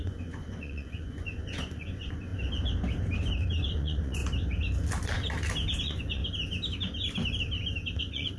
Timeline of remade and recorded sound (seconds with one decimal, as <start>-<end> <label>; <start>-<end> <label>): 0.0-2.3 remade; 2.3-3.7 recorded; 3.7-4.2 remade; 4.2-5.8 recorded; 5.8-6.2 remade; 6.2-8.0 recorded; 8.0-8.4 remade